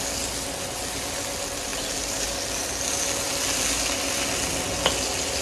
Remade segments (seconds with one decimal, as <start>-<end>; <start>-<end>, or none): none